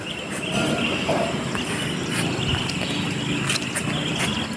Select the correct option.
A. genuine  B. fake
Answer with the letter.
A